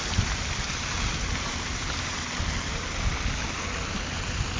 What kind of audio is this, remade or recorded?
recorded